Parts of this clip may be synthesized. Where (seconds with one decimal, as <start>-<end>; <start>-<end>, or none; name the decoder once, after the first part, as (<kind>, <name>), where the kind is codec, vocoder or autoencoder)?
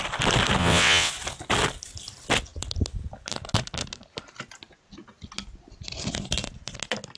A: 0.6-1.1 (vocoder, WaveNeXt)